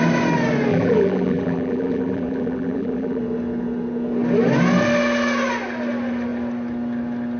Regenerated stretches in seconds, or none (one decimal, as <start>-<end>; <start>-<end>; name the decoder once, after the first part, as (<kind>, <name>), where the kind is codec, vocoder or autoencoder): 0.7-3.2 (vocoder, BigVGAN v2)